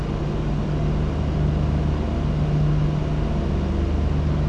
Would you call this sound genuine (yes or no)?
yes